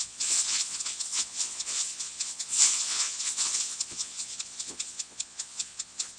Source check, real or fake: fake